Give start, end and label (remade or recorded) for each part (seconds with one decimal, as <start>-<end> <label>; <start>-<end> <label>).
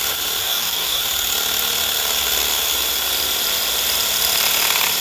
0.0-0.4 recorded; 0.4-1.0 remade; 1.0-5.0 recorded